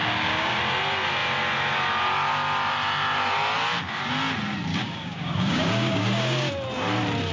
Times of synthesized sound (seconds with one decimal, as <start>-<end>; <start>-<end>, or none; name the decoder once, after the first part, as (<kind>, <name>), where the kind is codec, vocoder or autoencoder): 0.0-0.6 (codec, DAC); 4.7-6.5